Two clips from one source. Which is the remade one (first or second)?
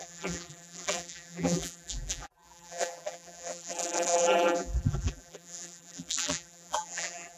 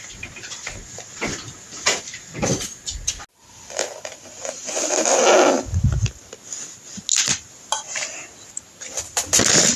first